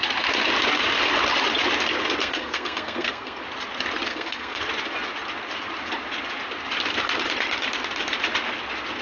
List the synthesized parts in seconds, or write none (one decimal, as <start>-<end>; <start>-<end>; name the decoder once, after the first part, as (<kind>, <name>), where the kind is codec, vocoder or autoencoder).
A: 2.2-3.4 (codec, SNAC); 4.1-4.6